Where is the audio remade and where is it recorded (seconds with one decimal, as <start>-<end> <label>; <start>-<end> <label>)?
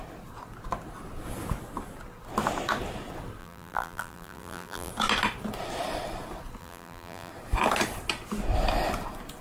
0.0-3.4 recorded; 3.4-4.9 remade; 4.9-6.6 recorded; 6.6-7.3 remade; 7.3-9.4 recorded